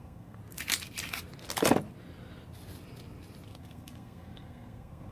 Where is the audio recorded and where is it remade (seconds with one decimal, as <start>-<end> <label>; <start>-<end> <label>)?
0.0-0.4 remade; 0.4-3.5 recorded; 3.5-5.1 remade